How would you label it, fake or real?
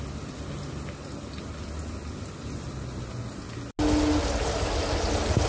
real